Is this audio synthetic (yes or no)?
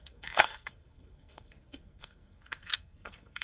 yes